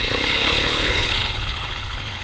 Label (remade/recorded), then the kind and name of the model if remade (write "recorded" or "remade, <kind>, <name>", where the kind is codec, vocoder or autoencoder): remade, codec, HILCodec